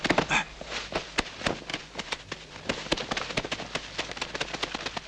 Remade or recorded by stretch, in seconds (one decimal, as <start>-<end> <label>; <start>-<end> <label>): 0.0-1.7 recorded; 1.7-2.2 remade; 2.2-5.1 recorded